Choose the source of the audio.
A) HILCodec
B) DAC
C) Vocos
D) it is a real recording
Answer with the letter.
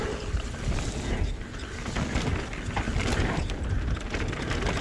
D